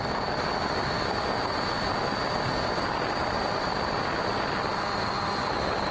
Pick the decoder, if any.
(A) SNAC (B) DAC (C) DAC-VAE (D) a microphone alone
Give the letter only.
D